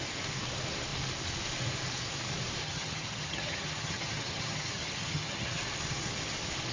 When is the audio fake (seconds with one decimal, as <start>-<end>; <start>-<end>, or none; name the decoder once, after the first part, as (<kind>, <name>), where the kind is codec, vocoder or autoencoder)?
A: 2.6-5.6 (vocoder, HiFi-GAN)